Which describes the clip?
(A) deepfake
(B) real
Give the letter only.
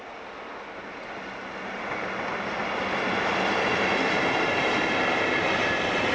B